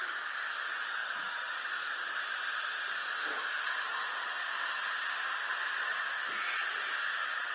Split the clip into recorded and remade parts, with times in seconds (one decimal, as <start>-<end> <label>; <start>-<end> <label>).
0.0-1.0 recorded; 1.0-2.2 remade; 2.2-5.9 recorded; 5.9-6.7 remade; 6.7-7.5 recorded